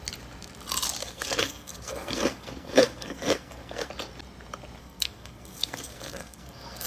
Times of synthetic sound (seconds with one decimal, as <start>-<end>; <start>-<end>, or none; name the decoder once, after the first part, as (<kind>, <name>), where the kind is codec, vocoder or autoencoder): 1.0-3.9 (codec, SNAC); 4.8-6.9